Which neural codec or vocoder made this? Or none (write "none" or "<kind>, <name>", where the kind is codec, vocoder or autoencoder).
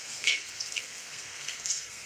codec, SNAC